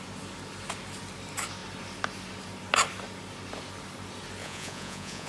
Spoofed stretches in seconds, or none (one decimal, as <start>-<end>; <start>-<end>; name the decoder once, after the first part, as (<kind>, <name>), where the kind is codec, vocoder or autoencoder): 4.4-5.3 (vocoder, Vocos)